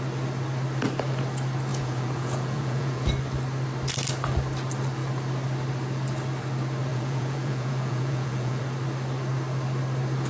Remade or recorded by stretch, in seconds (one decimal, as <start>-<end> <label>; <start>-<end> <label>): 0.0-1.7 recorded; 1.7-3.1 remade; 3.1-6.9 recorded; 6.9-8.6 remade; 8.6-10.3 recorded

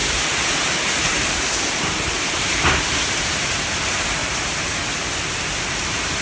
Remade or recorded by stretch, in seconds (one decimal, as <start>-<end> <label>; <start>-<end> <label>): 0.0-3.7 remade; 3.7-4.2 recorded; 4.2-5.1 remade; 5.1-6.2 recorded

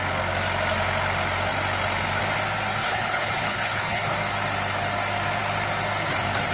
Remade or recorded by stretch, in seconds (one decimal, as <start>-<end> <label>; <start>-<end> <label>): 0.0-2.8 recorded; 2.8-4.0 remade; 4.0-6.5 recorded

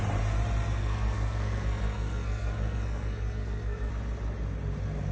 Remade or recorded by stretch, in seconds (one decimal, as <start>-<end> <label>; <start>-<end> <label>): 0.0-0.8 recorded; 0.8-3.9 remade; 3.9-5.1 recorded

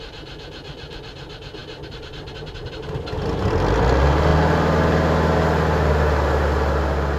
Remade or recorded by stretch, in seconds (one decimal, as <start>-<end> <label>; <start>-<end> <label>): 0.0-7.2 recorded